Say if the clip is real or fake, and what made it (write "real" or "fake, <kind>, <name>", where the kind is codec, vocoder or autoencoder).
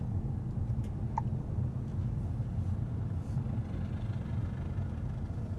real